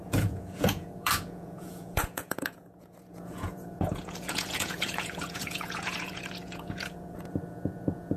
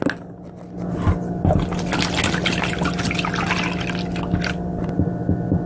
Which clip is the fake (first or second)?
first